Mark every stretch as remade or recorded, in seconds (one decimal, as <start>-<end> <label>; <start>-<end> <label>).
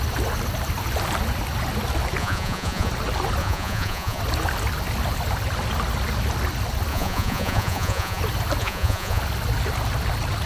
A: 0.0-2.2 recorded; 2.2-2.9 remade; 2.9-3.4 recorded; 3.4-4.2 remade; 4.2-6.9 recorded; 6.9-8.2 remade; 8.2-8.6 recorded; 8.6-9.2 remade; 9.2-10.5 recorded